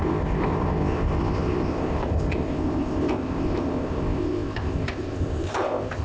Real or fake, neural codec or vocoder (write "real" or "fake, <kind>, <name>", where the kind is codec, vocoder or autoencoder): fake, codec, ZipCodec